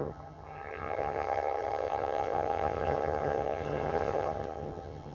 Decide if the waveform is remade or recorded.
remade